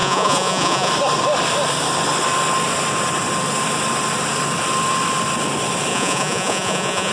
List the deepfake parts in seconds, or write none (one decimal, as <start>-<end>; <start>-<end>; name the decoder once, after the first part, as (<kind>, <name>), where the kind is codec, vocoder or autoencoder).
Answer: 0.0-0.9 (vocoder, Vocos); 5.9-7.1